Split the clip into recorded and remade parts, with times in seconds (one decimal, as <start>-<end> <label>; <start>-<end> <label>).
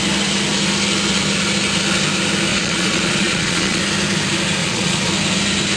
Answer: 0.0-2.5 recorded; 2.5-3.8 remade; 3.8-4.6 recorded; 4.6-5.1 remade; 5.1-5.8 recorded